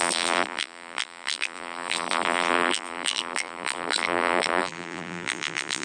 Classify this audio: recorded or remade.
remade